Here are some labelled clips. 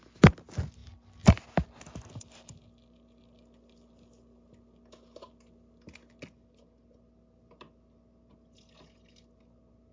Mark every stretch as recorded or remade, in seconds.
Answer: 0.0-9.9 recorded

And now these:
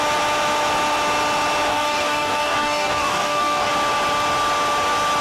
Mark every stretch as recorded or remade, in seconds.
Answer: 0.0-1.7 recorded; 1.7-3.7 remade; 3.7-5.2 recorded